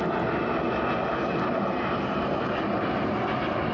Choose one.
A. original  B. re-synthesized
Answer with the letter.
A